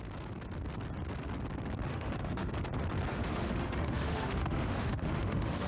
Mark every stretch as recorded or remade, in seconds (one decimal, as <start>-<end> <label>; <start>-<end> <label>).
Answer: 0.0-1.9 recorded; 1.9-2.5 remade; 2.5-3.1 recorded; 3.1-5.7 remade